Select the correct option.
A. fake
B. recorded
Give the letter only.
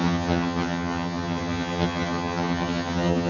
A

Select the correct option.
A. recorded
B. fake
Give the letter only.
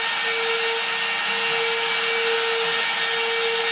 A